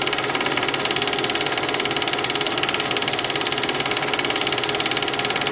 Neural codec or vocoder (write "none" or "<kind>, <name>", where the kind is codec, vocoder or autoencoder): none